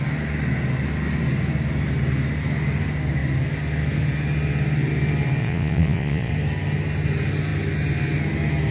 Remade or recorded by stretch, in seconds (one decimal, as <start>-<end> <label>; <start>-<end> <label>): 0.0-5.4 recorded; 5.4-6.3 remade; 6.3-8.7 recorded